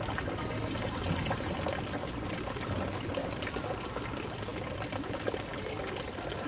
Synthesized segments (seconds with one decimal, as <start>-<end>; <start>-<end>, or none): 2.0-2.7